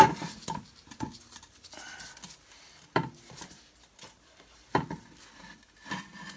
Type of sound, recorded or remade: recorded